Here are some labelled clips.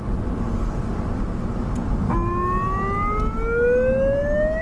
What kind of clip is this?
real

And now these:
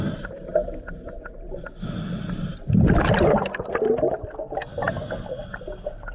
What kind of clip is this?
real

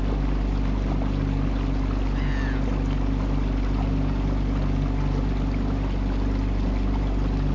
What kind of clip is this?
real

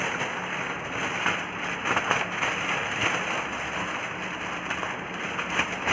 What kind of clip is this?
real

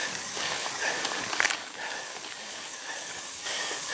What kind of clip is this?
fake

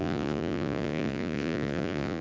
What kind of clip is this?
fake